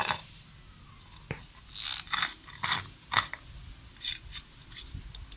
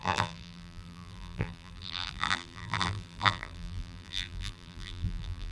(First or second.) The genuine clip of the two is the first